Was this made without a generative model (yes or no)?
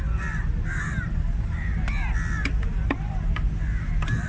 yes